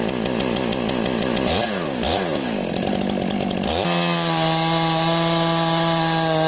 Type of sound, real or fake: real